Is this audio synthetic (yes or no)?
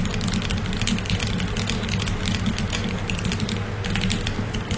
no